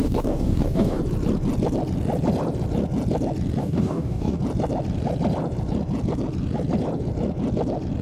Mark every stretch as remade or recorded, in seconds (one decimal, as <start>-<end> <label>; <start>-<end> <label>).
0.0-1.0 remade; 1.0-3.6 recorded; 3.6-4.4 remade; 4.4-8.0 recorded